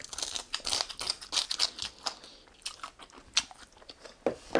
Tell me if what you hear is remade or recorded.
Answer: recorded